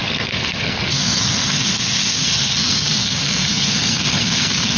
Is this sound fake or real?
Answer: fake